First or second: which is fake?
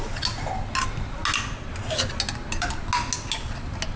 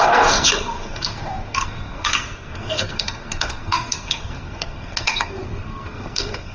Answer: second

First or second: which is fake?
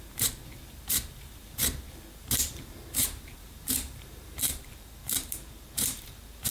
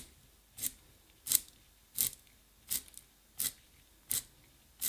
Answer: first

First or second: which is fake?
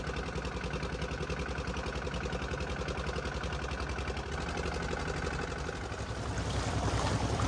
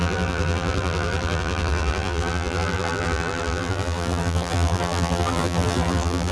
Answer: second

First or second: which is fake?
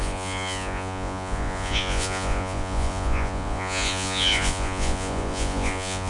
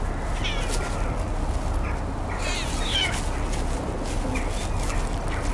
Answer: first